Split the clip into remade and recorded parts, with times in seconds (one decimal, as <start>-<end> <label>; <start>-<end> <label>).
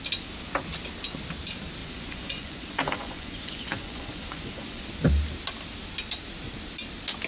0.0-1.8 recorded; 1.8-4.9 remade; 4.9-7.3 recorded